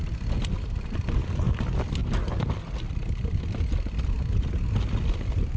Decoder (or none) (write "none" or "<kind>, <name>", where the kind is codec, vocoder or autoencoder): none